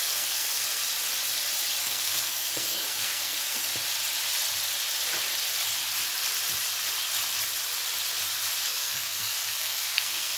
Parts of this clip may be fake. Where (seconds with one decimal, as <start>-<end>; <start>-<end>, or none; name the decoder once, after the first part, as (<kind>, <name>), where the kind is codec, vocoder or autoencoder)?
0.0-0.8 (codec, SNAC); 1.8-3.7; 8.6-10.4